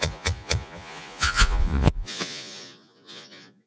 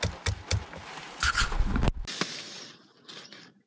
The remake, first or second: first